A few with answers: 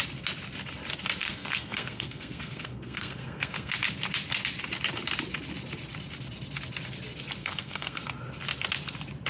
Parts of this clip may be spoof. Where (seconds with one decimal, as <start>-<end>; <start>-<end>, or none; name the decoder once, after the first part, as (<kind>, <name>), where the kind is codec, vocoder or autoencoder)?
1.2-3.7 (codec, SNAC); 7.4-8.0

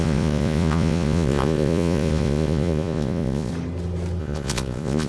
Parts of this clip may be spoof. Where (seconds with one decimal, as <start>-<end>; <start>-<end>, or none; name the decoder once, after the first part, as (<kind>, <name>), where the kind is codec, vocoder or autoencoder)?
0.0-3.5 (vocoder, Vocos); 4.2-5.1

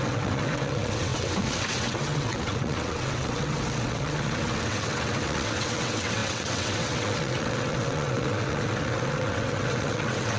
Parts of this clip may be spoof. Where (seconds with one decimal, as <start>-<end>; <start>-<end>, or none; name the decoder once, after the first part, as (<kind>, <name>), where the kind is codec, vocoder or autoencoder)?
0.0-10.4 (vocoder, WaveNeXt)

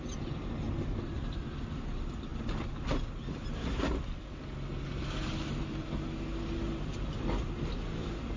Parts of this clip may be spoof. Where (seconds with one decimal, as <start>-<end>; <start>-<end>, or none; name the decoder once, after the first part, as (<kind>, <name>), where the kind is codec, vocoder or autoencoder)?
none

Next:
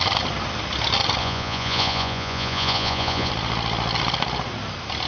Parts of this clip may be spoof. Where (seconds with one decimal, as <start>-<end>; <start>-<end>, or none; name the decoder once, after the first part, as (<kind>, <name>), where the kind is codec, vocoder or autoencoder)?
1.2-3.3 (vocoder, Vocos)